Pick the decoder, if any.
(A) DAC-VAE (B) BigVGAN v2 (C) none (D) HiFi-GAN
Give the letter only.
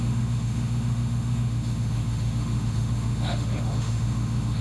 A